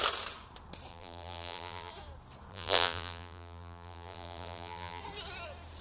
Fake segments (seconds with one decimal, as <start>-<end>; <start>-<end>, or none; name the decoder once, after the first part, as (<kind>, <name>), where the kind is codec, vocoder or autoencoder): 0.9-1.9 (vocoder, BigVGAN v2); 2.5-5.0